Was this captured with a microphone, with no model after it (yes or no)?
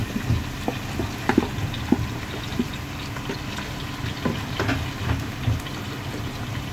yes